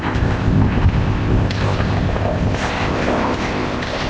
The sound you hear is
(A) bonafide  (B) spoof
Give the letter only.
B